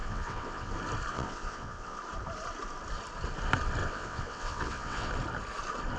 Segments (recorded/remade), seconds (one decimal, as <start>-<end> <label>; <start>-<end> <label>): 0.0-0.7 remade; 0.7-1.1 recorded; 1.1-2.0 remade; 2.0-3.8 recorded; 3.8-5.1 remade; 5.1-6.0 recorded

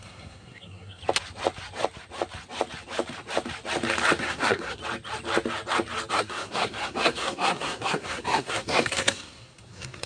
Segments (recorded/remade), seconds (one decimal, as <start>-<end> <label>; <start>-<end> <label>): 0.0-1.0 remade; 1.0-4.2 recorded; 4.2-4.8 remade; 4.8-6.1 recorded; 6.1-10.1 remade